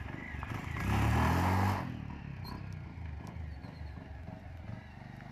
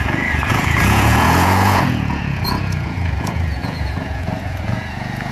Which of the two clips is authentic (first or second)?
first